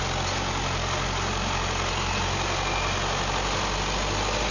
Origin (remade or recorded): recorded